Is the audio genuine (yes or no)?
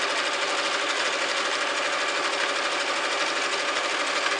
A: yes